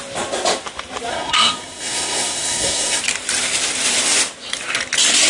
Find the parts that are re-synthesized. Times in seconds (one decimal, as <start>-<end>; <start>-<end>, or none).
1.1-3.0